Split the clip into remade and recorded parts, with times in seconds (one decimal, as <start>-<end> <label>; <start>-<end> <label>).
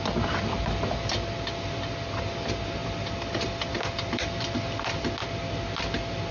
0.0-2.8 recorded; 2.8-5.0 remade; 5.0-6.3 recorded